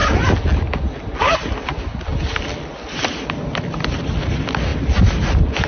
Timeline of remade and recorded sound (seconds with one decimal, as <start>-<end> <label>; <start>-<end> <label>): 0.0-5.7 recorded